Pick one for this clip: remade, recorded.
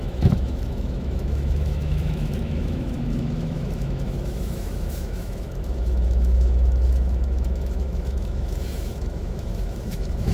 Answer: remade